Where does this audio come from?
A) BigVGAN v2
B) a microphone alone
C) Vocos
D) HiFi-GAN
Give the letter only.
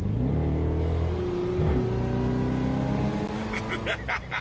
B